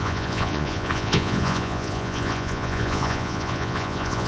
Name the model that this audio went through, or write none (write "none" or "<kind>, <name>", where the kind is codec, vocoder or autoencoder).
vocoder, Vocos